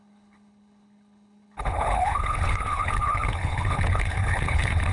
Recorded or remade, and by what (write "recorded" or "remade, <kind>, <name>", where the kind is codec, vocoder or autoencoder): remade, codec, HILCodec